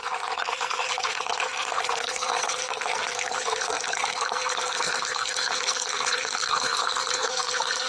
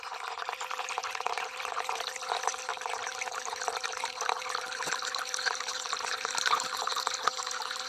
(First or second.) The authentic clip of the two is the second